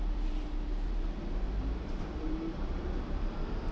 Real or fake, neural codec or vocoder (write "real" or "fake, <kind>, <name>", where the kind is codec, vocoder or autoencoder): fake, vocoder, BigVGAN v2